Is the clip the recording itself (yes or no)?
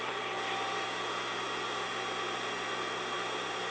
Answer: yes